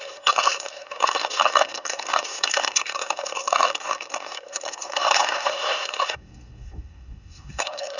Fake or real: fake